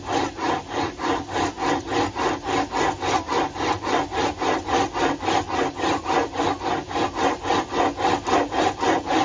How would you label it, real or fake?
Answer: real